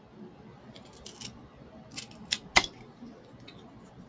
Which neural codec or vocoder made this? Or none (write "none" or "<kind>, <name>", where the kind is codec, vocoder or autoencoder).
none